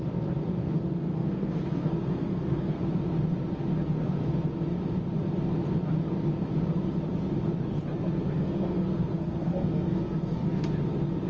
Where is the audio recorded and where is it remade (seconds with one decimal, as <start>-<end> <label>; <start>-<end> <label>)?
0.0-0.6 recorded; 0.6-2.8 remade; 2.8-8.4 recorded; 8.4-10.6 remade; 10.6-11.3 recorded